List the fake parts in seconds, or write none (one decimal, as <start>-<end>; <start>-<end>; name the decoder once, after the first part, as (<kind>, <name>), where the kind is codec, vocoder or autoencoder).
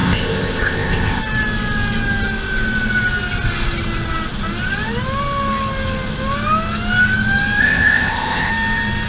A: 0.0-1.2 (codec, ZipCodec); 7.6-8.5